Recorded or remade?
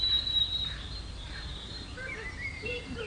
remade